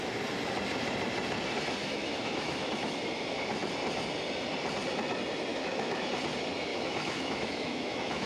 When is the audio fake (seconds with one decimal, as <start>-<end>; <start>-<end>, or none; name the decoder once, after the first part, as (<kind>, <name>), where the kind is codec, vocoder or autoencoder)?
1.8-3.0 (autoencoder, DAC-VAE); 5.5-6.1; 6.7-8.3